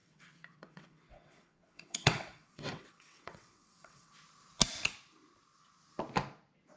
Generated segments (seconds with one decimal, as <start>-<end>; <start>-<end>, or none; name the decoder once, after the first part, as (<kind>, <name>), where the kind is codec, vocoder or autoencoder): 0.0-4.1 (vocoder, WaveNeXt)